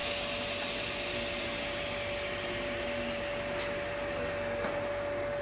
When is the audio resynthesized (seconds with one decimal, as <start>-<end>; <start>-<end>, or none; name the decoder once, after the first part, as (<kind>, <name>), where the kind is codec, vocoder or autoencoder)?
none